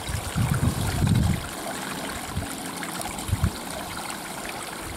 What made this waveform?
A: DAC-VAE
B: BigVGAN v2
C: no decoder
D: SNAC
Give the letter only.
B